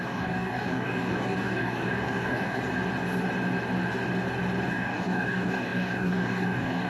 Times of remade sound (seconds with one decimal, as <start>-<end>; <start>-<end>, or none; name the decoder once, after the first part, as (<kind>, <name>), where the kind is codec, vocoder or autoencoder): 0.0-2.6 (codec, DAC); 4.7-6.9